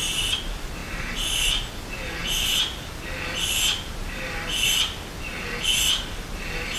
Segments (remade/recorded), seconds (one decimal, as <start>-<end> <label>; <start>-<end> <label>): 0.0-6.8 recorded